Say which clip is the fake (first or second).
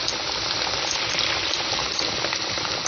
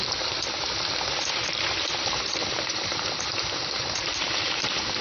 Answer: second